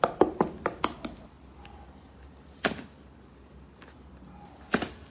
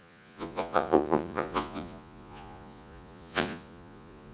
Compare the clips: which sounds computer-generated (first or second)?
second